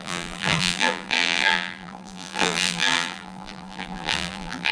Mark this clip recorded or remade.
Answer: remade